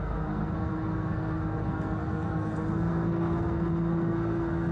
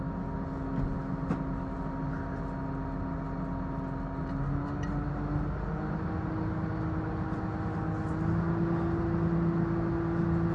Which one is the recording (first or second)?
second